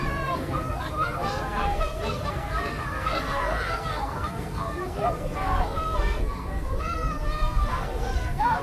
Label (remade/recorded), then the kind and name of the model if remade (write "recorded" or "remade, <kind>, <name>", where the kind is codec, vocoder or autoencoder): remade, codec, SNAC